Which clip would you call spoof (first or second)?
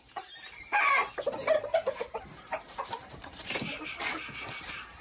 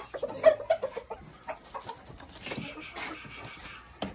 first